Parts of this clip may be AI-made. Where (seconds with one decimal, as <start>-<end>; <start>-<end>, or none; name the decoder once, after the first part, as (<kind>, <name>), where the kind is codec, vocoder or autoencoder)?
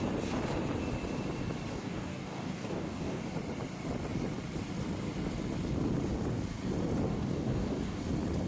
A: 1.7-3.2 (codec, DAC); 7.1-8.0